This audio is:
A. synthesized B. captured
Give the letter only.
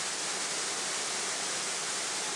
B